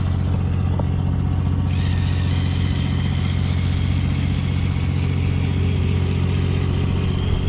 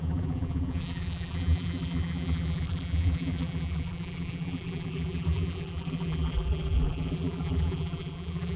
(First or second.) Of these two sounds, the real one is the first